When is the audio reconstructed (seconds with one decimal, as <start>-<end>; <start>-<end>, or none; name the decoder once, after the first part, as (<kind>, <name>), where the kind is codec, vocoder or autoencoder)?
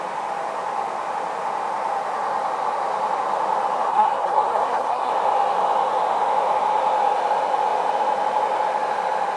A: 3.9-5.1 (codec, SNAC)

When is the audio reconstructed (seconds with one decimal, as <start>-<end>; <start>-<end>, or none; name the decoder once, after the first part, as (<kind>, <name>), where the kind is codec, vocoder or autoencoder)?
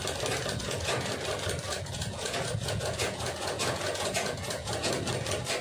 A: 0.6-1.1 (vocoder, Vocos); 1.7-4.9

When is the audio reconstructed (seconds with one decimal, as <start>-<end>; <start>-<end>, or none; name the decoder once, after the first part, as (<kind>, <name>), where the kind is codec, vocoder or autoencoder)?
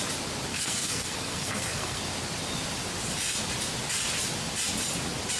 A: 0.5-2.0 (codec, SNAC)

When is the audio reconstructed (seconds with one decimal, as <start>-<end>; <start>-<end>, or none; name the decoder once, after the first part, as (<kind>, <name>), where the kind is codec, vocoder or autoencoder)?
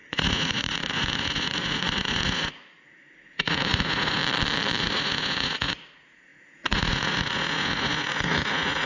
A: 0.0-4.2 (vocoder, Vocos); 4.8-8.9